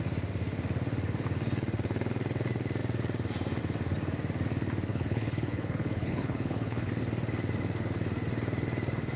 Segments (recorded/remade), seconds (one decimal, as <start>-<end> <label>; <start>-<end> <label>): 0.0-4.9 recorded; 4.9-6.9 remade; 6.9-9.2 recorded

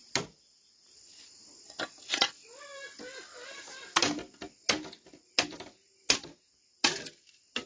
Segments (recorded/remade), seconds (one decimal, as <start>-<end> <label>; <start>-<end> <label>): 0.0-7.7 recorded

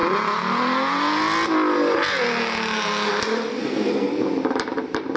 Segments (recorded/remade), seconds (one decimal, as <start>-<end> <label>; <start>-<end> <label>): 0.0-3.5 recorded; 3.5-4.2 remade; 4.2-5.2 recorded

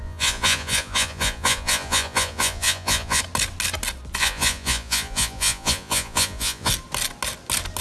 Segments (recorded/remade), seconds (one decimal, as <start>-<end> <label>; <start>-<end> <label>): 0.0-3.2 remade; 3.2-4.2 recorded; 4.2-6.7 remade; 6.7-7.8 recorded

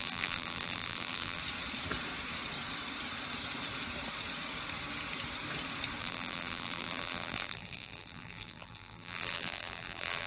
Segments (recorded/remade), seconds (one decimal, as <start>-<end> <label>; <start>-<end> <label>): 0.0-1.4 remade; 1.4-6.0 recorded; 6.0-10.3 remade